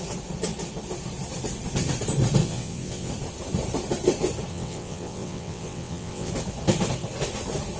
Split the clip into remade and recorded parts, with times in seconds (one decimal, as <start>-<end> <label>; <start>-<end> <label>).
0.0-2.4 recorded; 2.4-3.1 remade; 3.1-4.5 recorded; 4.5-6.3 remade; 6.3-7.8 recorded